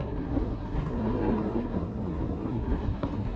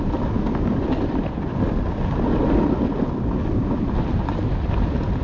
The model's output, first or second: first